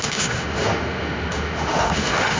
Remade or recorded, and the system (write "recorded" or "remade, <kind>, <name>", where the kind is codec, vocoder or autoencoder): remade, autoencoder, DAC-VAE